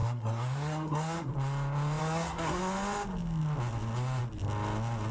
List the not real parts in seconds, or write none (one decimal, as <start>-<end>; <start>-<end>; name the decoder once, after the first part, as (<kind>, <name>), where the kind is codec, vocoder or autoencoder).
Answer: 0.0-1.3 (codec, SNAC); 2.0-2.6